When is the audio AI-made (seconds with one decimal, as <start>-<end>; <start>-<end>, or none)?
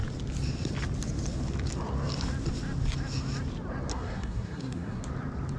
3.9-5.0